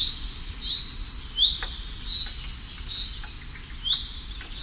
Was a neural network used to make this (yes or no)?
no